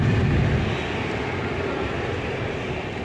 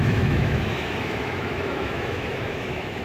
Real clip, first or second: first